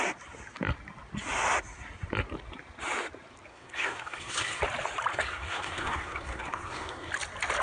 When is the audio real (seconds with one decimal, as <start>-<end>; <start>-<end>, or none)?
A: 0.0-3.5; 4.6-5.1; 7.1-7.6